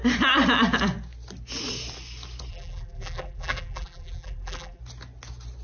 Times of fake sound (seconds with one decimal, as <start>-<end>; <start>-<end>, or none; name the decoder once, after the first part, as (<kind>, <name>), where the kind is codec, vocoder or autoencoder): 2.5-4.8 (vocoder, BigVGAN v2)